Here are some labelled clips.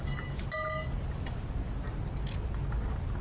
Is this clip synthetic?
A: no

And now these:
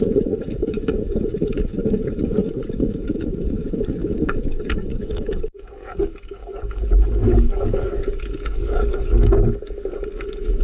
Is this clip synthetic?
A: yes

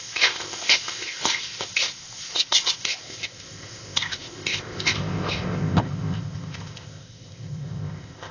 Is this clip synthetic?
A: yes